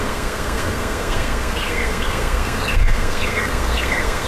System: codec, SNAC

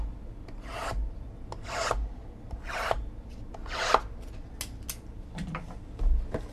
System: none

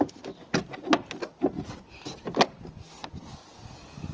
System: none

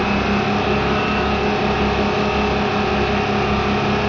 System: none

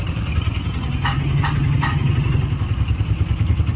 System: none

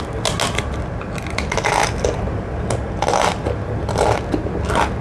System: none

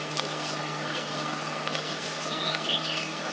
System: codec, SNAC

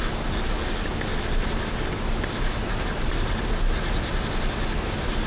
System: none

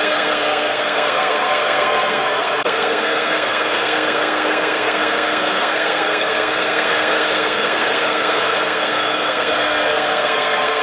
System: codec, SNAC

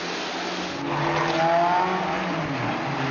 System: none